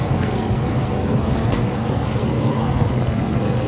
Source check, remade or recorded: remade